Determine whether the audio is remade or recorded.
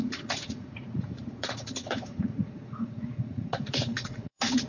remade